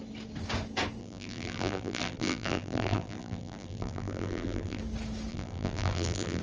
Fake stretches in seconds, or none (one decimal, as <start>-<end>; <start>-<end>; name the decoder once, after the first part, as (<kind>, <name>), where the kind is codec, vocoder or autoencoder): 1.0-4.8 (vocoder, BigVGAN v2); 5.3-6.4